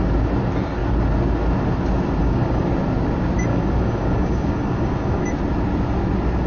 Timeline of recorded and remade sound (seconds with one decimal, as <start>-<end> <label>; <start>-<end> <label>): 0.0-2.2 recorded; 2.2-2.7 remade; 2.7-3.5 recorded; 3.5-5.2 remade; 5.2-6.5 recorded